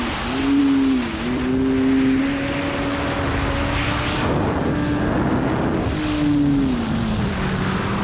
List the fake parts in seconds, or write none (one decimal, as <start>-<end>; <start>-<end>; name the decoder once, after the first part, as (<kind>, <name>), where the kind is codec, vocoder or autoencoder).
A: none

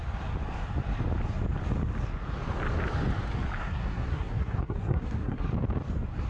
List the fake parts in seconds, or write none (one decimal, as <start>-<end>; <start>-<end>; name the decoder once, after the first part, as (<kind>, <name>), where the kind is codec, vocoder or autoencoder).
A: 3.6-5.5 (codec, SNAC)

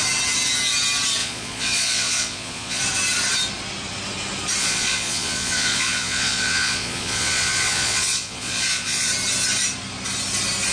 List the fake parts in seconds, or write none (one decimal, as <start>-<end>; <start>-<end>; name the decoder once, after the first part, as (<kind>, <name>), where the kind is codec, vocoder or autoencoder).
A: 1.2-2.8 (vocoder, Vocos); 4.6-9.1

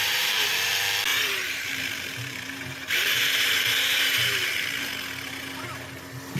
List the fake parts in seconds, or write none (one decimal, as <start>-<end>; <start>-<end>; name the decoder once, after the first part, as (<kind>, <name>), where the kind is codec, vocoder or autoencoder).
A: 0.0-0.5 (vocoder, BigVGAN v2); 1.1-4.9